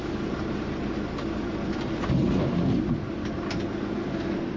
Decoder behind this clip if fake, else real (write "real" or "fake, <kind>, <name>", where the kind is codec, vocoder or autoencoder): real